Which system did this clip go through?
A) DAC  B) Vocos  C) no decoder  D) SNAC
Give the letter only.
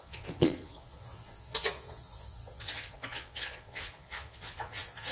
B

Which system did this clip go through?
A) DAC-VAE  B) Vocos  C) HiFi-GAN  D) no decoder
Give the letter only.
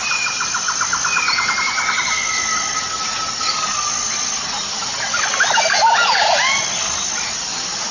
D